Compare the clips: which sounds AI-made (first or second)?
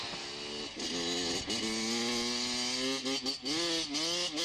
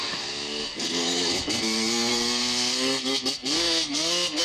second